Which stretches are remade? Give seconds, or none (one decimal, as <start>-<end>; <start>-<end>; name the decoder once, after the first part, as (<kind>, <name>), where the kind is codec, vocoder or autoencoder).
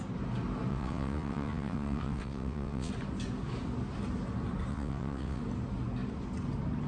0.7-2.9 (vocoder, WaveNeXt); 4.7-5.4